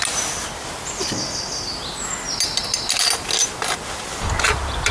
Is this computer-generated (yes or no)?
no